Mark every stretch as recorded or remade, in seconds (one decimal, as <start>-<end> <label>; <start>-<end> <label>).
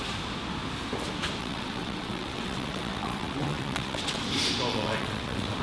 0.0-1.4 recorded; 1.4-4.2 remade; 4.2-4.7 recorded; 4.7-5.6 remade